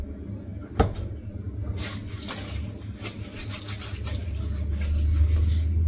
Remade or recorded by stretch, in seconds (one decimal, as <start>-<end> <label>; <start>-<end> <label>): 0.0-5.9 recorded